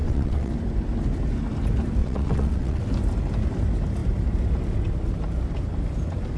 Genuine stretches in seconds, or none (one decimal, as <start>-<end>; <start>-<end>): 0.5-2.0; 2.8-6.4

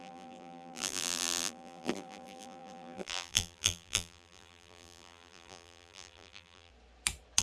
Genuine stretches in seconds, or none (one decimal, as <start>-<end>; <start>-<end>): 6.7-7.4

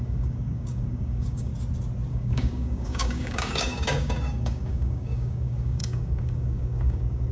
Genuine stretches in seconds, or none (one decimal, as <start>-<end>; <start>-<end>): 1.5-2.1

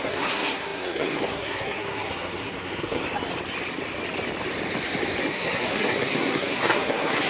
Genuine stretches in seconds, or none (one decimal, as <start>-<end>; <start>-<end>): 3.0-5.2

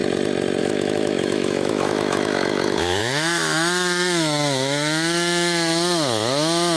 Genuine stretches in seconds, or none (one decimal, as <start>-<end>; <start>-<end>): 0.0-0.6

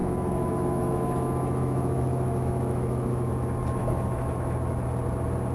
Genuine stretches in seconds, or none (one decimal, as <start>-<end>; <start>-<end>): 3.3-3.8; 4.3-5.5